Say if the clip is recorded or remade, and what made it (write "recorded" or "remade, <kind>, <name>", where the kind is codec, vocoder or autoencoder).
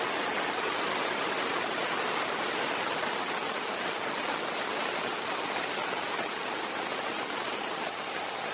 recorded